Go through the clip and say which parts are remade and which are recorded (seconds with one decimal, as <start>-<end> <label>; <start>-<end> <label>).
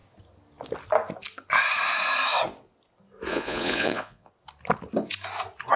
0.0-3.3 recorded; 3.3-4.3 remade; 4.3-5.8 recorded